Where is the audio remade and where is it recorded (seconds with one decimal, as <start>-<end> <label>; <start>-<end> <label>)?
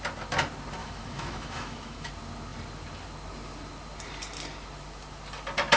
0.0-0.8 recorded; 0.8-2.1 remade; 2.1-5.8 recorded